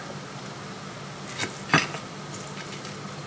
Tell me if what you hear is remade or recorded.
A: recorded